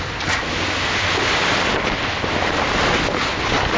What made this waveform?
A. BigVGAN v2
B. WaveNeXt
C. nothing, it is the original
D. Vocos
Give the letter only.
C